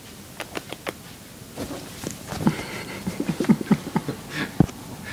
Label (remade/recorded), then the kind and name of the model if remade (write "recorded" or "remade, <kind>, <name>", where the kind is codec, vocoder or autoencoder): recorded